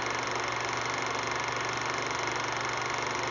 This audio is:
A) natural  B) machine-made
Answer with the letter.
A